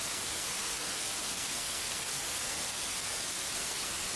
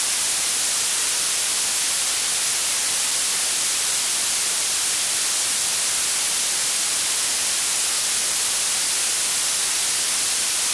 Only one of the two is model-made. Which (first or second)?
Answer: first